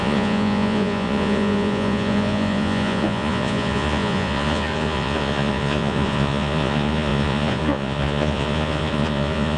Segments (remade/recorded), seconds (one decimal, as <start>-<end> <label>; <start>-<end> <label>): 0.0-9.6 remade